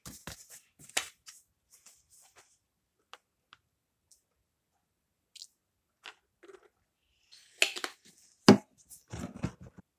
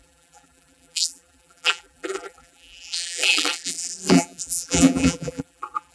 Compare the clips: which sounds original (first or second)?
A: first